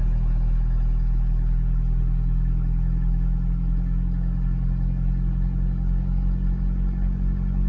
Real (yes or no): yes